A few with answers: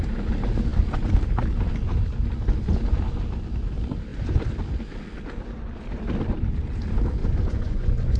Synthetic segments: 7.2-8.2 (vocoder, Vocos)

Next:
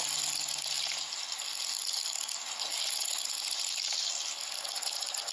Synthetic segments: none

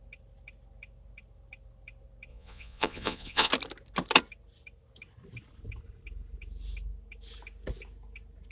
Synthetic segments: 2.3-3.5 (vocoder, Vocos)

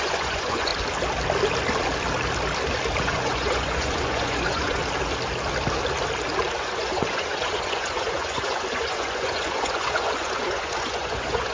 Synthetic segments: 0.0-0.7 (vocoder, Vocos); 3.0-4.8; 6.6-11.5

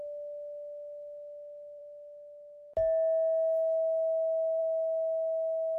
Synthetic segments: none

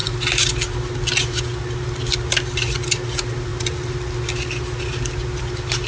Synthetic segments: none

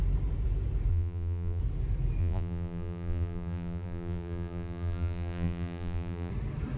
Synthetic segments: 0.9-1.6 (vocoder, BigVGAN v2); 2.2-6.3